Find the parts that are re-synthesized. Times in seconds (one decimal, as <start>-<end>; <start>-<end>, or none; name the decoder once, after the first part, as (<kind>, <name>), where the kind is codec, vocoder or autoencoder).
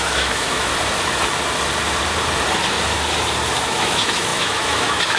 0.0-0.7 (autoencoder, DAC-VAE); 3.6-5.2